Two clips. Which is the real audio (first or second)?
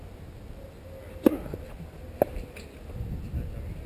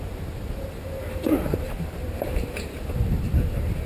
first